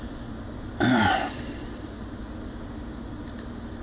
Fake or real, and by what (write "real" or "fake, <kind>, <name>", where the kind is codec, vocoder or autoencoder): fake, vocoder, BigVGAN v2